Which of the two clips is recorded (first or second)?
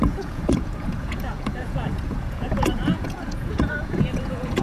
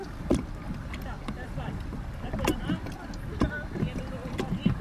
second